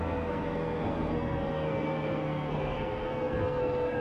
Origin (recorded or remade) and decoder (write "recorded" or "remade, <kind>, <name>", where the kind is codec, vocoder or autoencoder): remade, codec, SNAC